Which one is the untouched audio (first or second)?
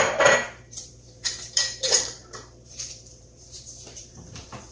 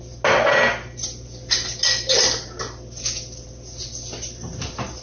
second